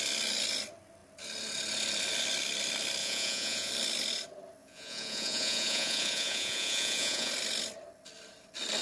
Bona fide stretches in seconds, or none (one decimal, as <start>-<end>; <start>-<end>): 0.0-3.0; 3.7-4.6; 7.3-8.8